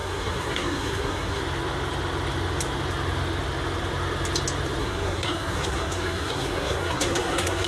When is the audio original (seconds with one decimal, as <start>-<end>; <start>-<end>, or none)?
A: 1.4-4.8